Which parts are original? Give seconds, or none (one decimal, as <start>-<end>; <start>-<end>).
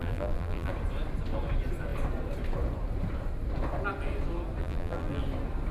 0.7-4.6; 5.2-5.7